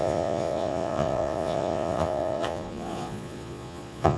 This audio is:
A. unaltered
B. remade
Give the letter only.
B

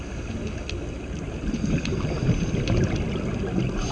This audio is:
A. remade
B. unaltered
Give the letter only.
B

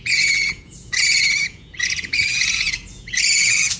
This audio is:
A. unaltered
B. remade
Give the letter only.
B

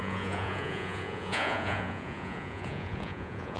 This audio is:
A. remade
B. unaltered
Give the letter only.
A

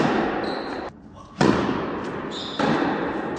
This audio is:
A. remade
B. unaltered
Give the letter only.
B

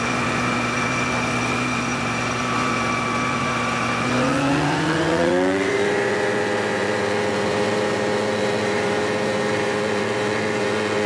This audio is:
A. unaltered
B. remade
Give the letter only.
B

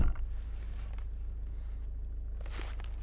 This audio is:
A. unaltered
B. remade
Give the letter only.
A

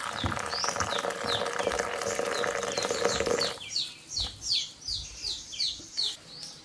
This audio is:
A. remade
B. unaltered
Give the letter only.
B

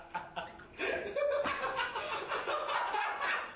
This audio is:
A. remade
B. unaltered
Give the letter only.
A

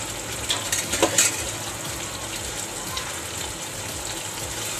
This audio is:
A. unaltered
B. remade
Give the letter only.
A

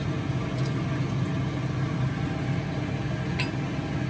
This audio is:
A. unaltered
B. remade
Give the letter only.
A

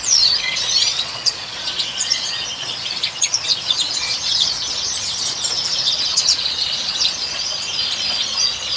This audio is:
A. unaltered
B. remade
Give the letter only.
B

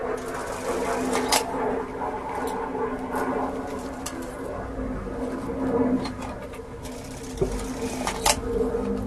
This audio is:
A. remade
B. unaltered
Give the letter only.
B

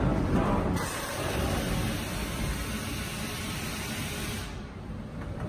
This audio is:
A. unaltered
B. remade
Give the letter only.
A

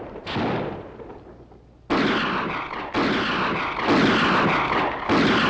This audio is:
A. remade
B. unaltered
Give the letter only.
B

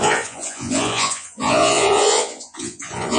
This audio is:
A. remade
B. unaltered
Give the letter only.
A